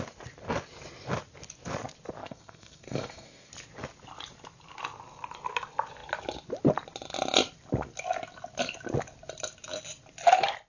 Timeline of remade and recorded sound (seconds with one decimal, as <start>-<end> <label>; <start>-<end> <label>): 0.0-2.2 recorded; 2.2-3.5 remade; 3.5-10.7 recorded